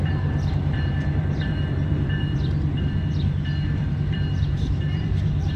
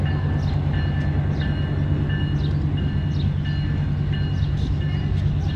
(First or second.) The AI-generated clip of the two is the first